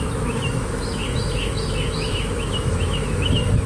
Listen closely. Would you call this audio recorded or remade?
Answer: remade